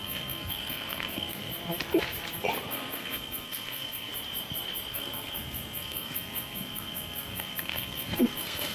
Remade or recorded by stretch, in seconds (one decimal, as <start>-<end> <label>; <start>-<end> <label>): 0.0-1.5 remade; 1.5-2.7 recorded; 2.7-4.1 remade; 4.1-4.9 recorded; 4.9-8.7 remade